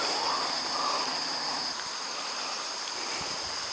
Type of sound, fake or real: real